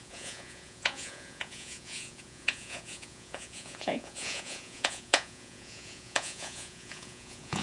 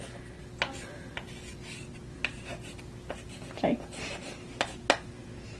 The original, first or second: second